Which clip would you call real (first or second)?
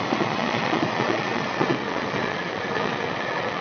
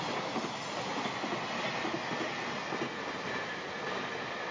second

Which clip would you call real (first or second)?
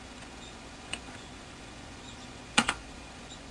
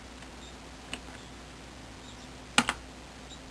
second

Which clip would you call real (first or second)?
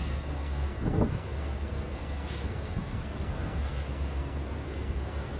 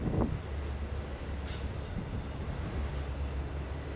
second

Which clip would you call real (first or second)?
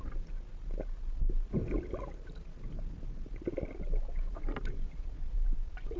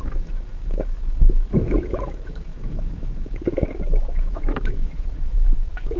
first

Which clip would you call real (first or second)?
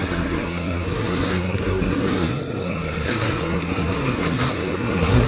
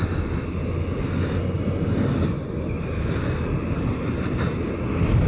second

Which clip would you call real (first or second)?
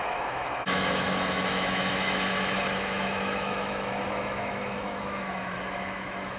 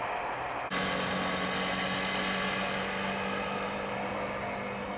second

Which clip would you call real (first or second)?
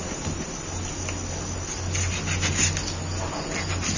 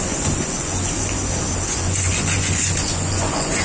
first